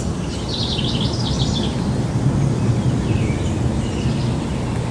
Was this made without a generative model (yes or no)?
yes